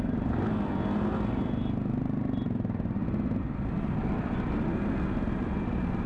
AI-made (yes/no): no